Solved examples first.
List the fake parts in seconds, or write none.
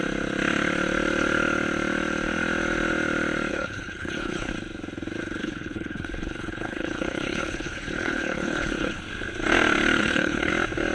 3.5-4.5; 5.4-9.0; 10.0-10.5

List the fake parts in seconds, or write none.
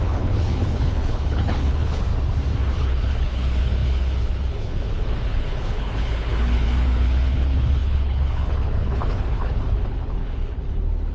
0.0-2.1; 2.8-11.1